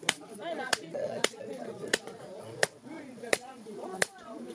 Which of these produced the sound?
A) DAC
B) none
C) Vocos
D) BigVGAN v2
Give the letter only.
C